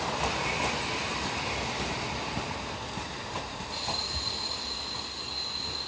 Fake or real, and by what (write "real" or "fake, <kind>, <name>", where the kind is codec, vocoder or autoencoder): real